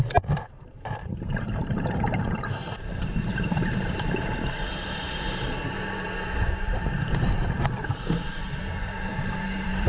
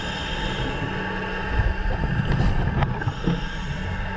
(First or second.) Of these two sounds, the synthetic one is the first